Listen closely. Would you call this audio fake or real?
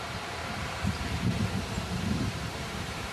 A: fake